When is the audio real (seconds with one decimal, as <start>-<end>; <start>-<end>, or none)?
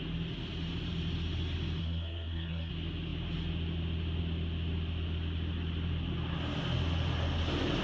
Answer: 0.0-1.8; 2.7-7.8